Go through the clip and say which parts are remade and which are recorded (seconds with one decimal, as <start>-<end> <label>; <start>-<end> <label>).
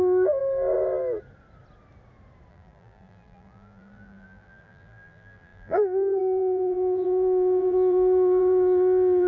0.0-0.4 remade; 0.4-2.5 recorded; 2.5-9.3 remade